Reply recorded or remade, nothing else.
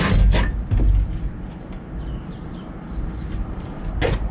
recorded